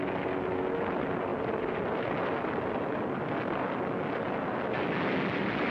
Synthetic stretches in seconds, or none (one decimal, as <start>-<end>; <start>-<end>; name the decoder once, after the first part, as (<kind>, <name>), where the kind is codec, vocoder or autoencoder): none